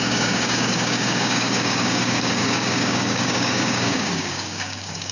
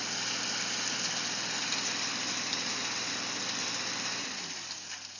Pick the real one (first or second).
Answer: second